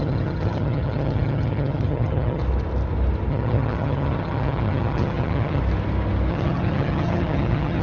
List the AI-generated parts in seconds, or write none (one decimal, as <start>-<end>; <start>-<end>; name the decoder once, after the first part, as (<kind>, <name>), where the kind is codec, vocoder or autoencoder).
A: 0.0-2.4 (vocoder, HiFi-GAN); 3.3-5.6; 6.3-7.8